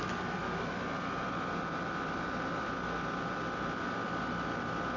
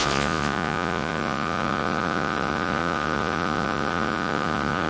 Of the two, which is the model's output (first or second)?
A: second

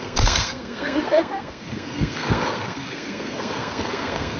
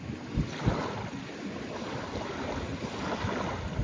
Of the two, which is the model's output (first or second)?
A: first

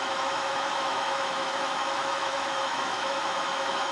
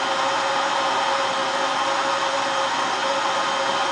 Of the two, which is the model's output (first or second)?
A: first